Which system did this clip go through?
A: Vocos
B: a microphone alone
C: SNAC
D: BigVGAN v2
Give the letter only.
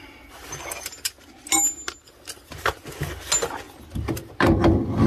B